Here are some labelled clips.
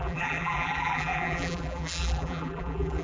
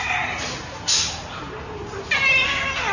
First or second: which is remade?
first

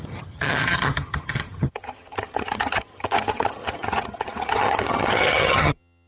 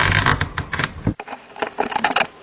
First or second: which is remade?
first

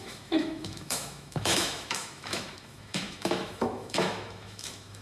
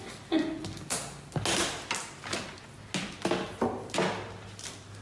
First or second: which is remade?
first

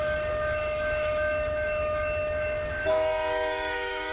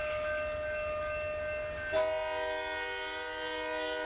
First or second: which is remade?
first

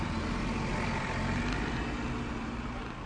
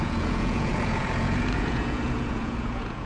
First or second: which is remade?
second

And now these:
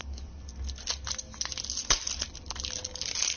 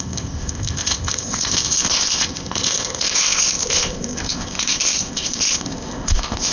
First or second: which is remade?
second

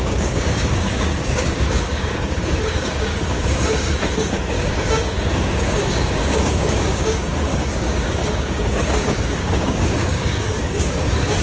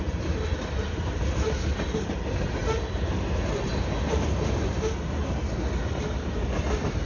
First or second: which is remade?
first